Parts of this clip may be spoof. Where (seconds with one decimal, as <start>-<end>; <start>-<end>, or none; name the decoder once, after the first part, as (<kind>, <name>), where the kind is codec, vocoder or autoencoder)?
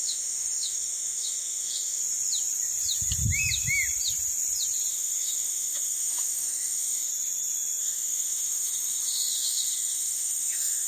0.0-2.0 (autoencoder, DAC-VAE); 4.9-7.1; 7.8-10.9